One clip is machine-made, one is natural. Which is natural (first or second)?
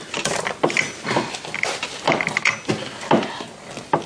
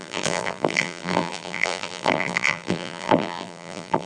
first